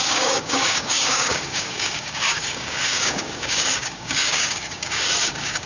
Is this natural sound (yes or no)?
no